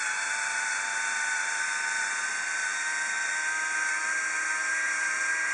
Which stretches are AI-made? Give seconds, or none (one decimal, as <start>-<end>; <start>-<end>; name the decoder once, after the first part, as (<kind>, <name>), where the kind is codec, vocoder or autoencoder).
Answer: none